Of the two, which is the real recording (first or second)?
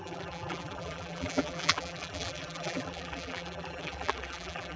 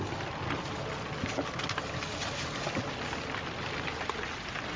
second